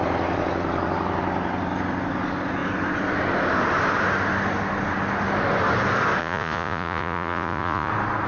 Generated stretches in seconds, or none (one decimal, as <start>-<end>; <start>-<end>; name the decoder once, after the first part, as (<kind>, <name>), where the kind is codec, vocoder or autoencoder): 6.2-7.9 (vocoder, Vocos)